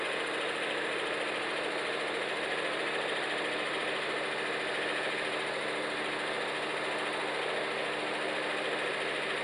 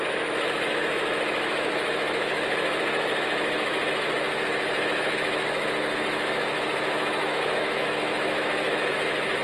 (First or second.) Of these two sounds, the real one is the first